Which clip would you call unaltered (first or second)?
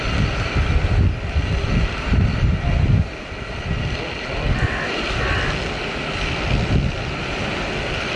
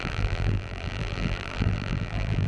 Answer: first